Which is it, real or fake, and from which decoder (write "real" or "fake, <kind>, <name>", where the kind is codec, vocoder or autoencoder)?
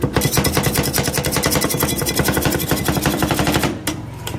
real